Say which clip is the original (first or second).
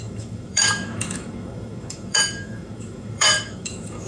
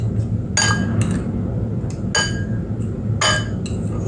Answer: second